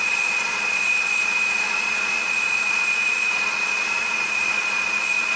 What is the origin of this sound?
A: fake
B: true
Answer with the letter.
A